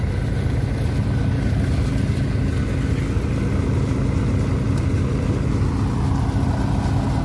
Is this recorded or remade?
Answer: recorded